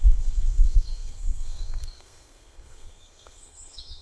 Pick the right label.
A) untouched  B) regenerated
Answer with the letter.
B